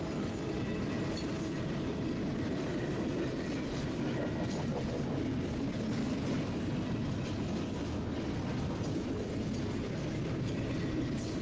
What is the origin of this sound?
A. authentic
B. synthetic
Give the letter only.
A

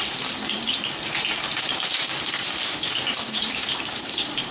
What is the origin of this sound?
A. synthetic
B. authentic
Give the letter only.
A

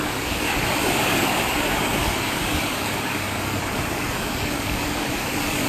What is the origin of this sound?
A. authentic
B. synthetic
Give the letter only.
B